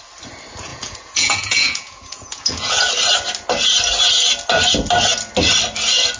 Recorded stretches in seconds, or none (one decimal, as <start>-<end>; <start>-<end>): 0.0-0.7; 2.9-6.2